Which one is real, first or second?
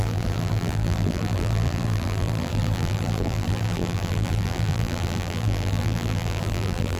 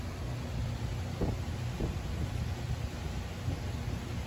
second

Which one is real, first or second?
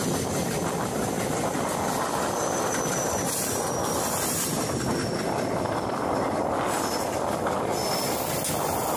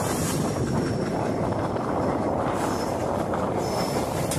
first